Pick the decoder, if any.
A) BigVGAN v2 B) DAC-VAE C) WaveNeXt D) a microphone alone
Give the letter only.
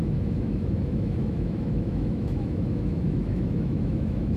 B